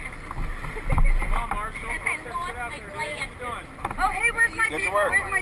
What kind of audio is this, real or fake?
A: real